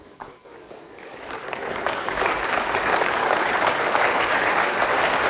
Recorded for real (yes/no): no